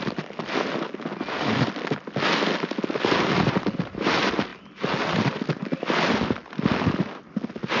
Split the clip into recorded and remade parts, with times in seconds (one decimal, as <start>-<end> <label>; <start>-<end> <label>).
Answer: 0.0-7.8 recorded